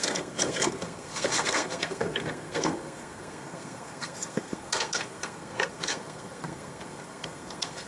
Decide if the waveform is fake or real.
fake